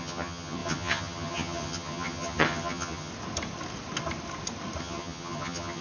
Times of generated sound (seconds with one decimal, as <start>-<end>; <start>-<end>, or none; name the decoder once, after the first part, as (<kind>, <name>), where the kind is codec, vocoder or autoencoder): 0.0-3.1 (vocoder, HiFi-GAN); 4.8-5.8